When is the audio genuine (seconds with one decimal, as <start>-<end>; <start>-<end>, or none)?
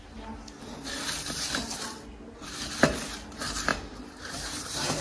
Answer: 0.0-3.7